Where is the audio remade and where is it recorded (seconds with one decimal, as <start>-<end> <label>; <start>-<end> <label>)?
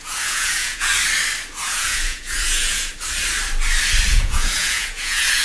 0.0-0.9 remade; 0.9-1.6 recorded; 1.6-2.9 remade; 2.9-4.1 recorded; 4.1-5.4 remade